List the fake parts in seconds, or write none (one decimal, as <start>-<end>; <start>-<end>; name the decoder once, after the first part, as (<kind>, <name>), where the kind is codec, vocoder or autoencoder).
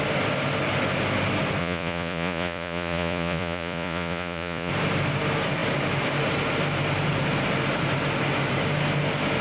1.6-4.7 (vocoder, Vocos)